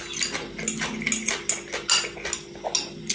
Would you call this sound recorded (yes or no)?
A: yes